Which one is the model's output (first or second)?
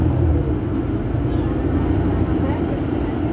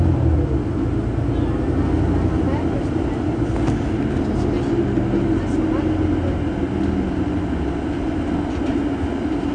first